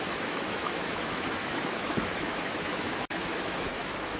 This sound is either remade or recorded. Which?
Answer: remade